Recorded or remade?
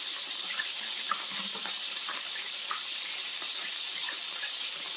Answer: remade